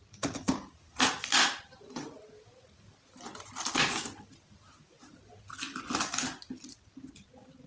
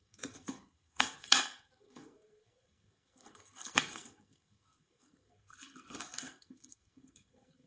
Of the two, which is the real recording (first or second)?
first